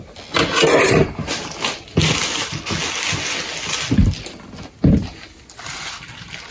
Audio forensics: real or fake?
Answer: real